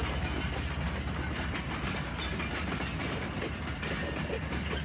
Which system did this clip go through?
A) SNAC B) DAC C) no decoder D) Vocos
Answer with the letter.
C